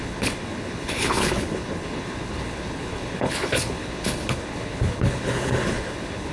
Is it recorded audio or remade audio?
remade